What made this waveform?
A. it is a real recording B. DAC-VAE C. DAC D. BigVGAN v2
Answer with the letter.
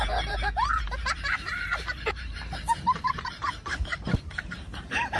D